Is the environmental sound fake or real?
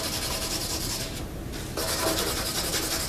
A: real